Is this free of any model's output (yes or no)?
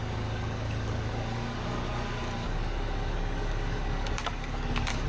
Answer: no